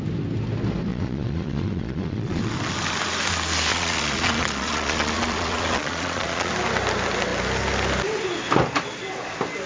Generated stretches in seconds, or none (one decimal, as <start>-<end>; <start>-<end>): 0.9-2.4; 3.7-6.5